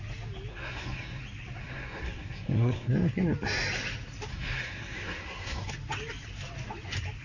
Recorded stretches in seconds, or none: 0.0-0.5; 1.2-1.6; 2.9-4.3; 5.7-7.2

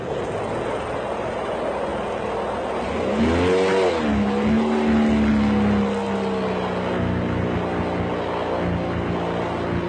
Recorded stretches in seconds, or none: 0.0-9.9

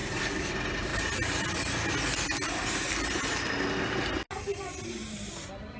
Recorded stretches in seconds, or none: 0.0-5.8

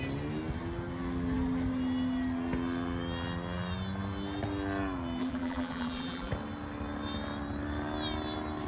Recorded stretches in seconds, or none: 0.0-5.2; 6.3-8.7

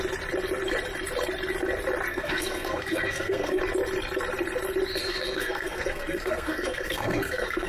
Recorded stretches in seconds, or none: 0.0-2.1; 3.6-5.0

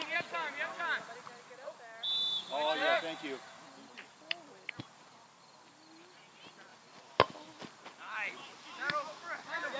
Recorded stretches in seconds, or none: 0.0-9.8

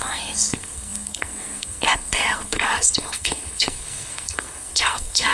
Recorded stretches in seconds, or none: none